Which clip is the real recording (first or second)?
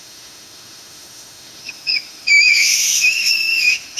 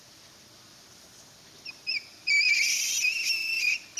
second